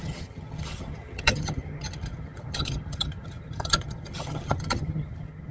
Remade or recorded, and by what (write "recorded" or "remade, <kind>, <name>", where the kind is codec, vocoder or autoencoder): remade, vocoder, HiFi-GAN